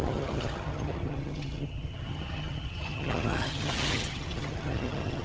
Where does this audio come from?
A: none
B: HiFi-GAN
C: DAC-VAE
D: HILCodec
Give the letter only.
B